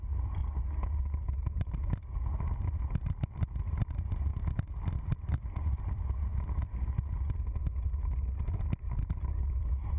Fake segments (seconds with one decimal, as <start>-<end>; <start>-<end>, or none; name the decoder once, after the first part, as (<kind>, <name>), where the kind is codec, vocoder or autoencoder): 0.0-0.4 (vocoder, BigVGAN v2); 3.4-4.3; 5.0-6.3; 8.5-10.0